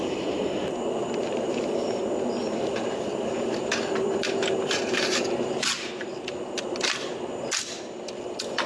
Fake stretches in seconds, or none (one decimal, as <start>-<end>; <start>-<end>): 1.0-2.0; 2.4-5.9